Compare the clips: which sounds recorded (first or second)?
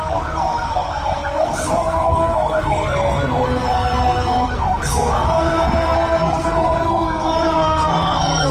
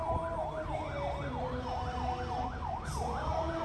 second